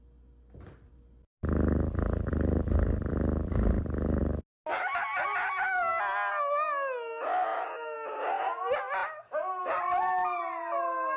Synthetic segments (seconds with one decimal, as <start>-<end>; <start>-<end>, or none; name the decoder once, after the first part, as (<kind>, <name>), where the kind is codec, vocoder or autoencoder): none